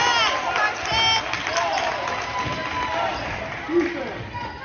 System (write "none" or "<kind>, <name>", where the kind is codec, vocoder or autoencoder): none